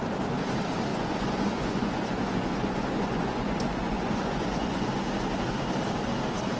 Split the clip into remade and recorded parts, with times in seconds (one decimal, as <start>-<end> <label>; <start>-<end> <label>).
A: 0.0-0.9 recorded; 0.9-4.9 remade; 4.9-6.6 recorded